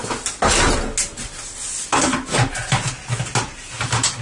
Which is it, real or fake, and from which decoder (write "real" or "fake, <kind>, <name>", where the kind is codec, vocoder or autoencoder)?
real